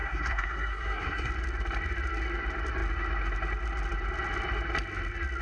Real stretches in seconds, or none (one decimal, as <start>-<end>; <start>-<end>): 1.3-5.4